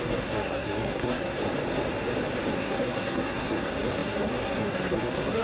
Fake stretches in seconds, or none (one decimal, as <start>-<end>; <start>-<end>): 0.0-1.4; 2.5-5.4